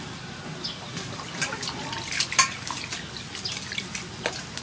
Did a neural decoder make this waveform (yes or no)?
no